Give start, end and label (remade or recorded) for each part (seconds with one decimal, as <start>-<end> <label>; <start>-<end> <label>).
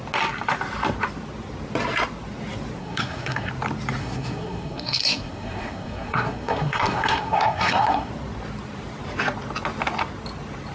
0.0-2.8 recorded; 2.8-3.5 remade; 3.5-4.0 recorded; 4.0-8.1 remade; 8.1-10.7 recorded